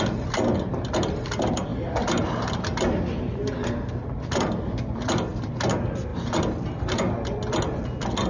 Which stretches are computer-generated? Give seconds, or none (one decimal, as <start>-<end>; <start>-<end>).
none